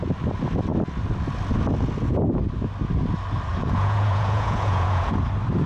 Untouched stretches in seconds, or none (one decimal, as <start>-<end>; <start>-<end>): 0.0-3.5; 5.1-5.7